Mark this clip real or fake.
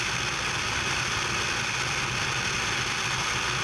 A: real